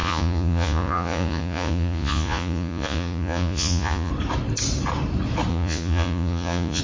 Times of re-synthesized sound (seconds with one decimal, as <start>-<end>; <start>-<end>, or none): 0.0-4.1; 5.5-6.8